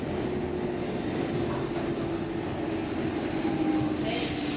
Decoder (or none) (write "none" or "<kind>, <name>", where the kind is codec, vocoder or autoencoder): none